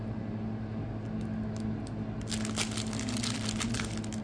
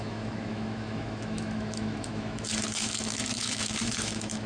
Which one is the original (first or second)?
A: first